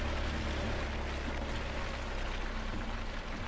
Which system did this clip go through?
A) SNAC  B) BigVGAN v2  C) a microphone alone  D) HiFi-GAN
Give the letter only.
C